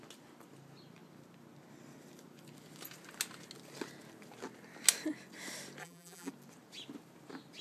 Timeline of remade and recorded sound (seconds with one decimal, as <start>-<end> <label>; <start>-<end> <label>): 0.0-5.8 recorded; 5.8-6.3 remade; 6.3-7.6 recorded